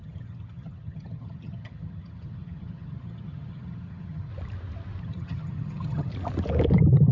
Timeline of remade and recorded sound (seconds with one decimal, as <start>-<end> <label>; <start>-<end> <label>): 0.0-4.3 remade; 4.3-5.0 recorded; 5.0-6.1 remade; 6.1-7.1 recorded